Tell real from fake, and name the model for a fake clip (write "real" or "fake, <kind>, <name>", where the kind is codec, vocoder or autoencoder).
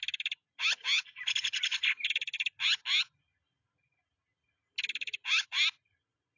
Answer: real